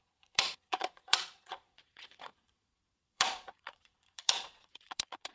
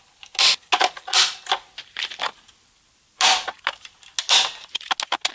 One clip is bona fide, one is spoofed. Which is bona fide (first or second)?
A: second